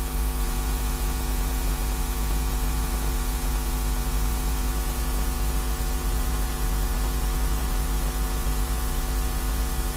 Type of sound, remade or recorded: remade